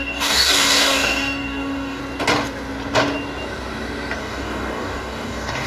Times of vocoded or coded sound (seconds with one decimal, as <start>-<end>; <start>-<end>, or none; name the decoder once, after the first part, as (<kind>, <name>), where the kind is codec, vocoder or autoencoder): 0.0-2.0 (codec, DAC); 4.2-5.7

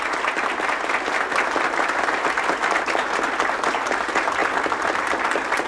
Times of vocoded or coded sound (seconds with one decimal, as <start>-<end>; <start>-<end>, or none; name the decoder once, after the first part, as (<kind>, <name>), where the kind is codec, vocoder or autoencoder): none

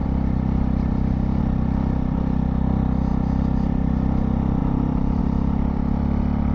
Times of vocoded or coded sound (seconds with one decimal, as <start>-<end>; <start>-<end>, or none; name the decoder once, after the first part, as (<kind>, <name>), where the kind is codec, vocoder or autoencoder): 0.0-1.4 (vocoder, BigVGAN v2); 4.6-5.2

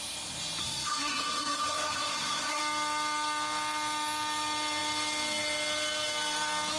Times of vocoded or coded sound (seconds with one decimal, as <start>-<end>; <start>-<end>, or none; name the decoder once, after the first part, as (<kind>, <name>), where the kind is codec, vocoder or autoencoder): 0.6-2.6 (codec, SNAC)

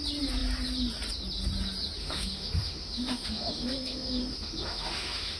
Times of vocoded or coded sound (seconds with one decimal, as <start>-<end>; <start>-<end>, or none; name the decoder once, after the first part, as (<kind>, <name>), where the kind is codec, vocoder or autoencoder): 2.0-5.4 (autoencoder, DAC-VAE)

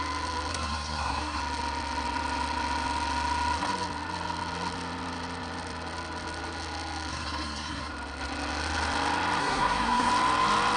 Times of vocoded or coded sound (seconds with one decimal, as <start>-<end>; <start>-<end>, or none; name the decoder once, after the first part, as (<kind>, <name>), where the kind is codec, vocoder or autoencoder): 0.5-1.4 (codec, SNAC); 7.1-7.9; 9.4-10.1

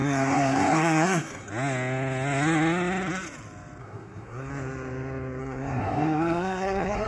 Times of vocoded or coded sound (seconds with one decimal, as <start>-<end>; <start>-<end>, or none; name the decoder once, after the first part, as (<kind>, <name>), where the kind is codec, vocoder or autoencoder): 0.0-1.5 (codec, SNAC); 3.8-4.5; 5.4-7.1

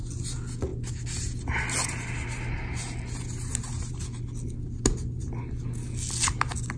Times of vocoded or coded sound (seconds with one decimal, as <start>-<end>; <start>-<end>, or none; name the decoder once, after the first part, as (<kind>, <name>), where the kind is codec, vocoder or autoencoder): none